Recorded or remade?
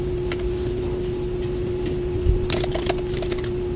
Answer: recorded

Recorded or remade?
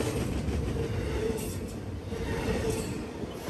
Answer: recorded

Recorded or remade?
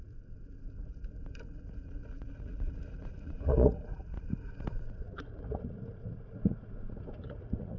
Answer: remade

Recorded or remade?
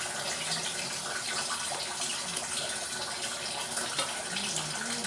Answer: recorded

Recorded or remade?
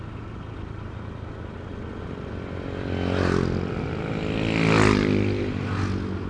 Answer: recorded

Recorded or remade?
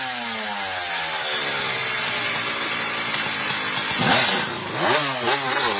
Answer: recorded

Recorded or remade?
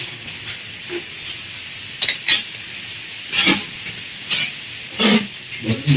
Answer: recorded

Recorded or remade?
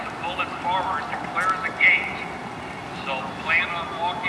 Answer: recorded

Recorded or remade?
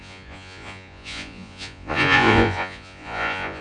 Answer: remade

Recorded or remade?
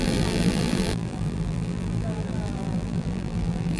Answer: remade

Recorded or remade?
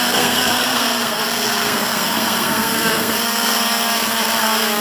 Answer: remade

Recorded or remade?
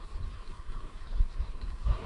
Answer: remade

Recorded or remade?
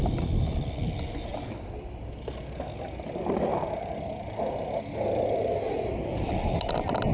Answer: recorded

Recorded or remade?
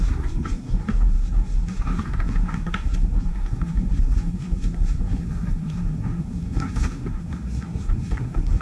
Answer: remade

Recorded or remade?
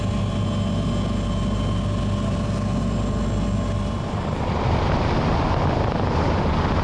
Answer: recorded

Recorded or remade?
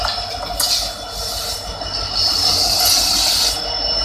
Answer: recorded